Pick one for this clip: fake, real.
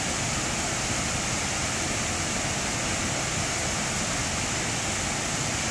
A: real